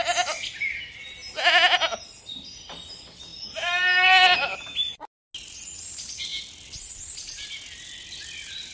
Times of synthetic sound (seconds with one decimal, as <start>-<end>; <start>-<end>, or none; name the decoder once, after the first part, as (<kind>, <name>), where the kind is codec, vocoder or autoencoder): none